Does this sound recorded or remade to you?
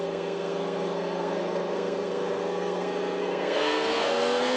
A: remade